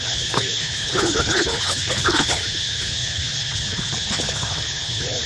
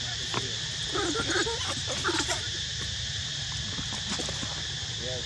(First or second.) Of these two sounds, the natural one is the second